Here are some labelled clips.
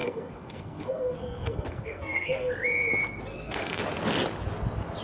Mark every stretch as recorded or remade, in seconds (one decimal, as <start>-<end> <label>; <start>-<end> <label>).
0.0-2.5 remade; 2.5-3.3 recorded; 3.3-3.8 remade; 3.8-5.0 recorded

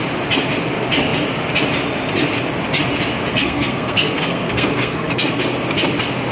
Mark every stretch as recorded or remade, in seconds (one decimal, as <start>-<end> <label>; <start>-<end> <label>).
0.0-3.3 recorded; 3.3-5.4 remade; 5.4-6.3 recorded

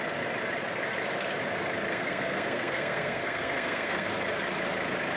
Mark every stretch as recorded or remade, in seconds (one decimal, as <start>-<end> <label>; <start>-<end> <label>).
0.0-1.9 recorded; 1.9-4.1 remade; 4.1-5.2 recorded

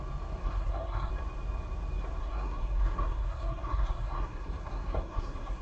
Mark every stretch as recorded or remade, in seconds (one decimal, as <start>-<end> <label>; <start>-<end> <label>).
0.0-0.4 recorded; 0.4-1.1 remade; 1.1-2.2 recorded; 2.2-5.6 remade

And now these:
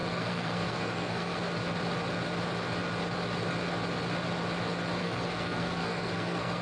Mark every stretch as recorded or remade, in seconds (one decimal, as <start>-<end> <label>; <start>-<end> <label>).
0.0-1.4 remade; 1.4-5.0 recorded; 5.0-6.6 remade

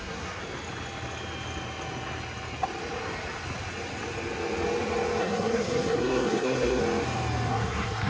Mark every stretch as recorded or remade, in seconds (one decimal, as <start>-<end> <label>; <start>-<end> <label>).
0.0-0.4 remade; 0.4-5.2 recorded; 5.2-6.8 remade; 6.8-7.5 recorded; 7.5-8.1 remade